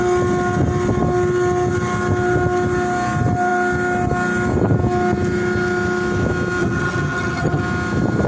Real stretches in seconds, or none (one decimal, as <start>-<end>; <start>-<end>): 0.0-6.6; 7.6-8.3